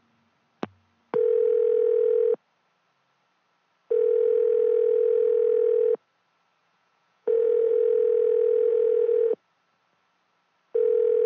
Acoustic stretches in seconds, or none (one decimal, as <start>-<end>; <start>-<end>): 0.0-6.6; 7.7-8.7; 9.4-11.3